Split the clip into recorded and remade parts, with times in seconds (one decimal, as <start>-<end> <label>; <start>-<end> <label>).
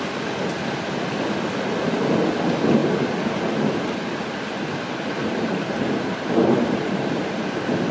0.0-5.2 recorded; 5.2-7.2 remade; 7.2-7.9 recorded